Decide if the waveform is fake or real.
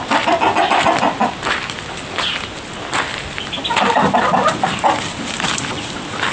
real